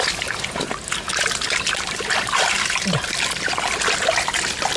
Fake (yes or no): no